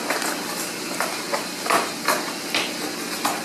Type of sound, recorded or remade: recorded